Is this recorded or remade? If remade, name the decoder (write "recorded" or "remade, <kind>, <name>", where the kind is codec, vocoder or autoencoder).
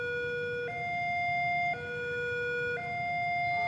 recorded